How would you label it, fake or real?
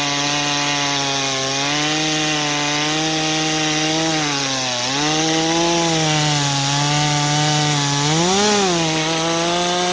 real